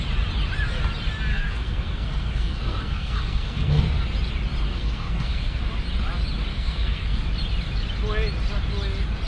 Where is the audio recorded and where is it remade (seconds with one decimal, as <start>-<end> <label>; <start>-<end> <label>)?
0.0-1.3 recorded; 1.3-3.8 remade; 3.8-4.7 recorded; 4.7-5.6 remade; 5.6-6.5 recorded; 6.5-7.2 remade; 7.2-9.3 recorded